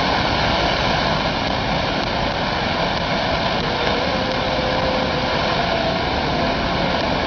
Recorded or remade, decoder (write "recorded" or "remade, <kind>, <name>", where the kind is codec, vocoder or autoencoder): recorded